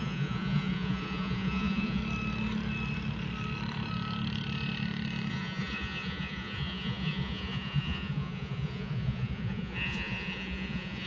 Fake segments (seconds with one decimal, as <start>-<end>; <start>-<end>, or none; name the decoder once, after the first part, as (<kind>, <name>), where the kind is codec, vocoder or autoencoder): 0.0-2.0 (vocoder, Vocos); 5.3-11.1